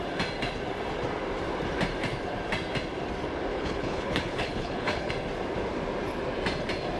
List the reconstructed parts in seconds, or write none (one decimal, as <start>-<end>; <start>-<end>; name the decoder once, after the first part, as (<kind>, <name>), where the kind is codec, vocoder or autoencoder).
3.5-5.1 (codec, HILCodec)